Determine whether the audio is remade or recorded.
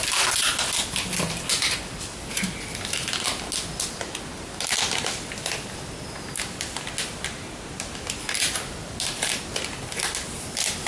recorded